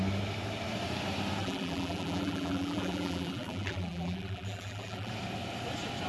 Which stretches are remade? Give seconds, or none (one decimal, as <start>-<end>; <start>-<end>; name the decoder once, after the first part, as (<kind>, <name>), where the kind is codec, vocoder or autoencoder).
1.4-5.1 (vocoder, BigVGAN v2)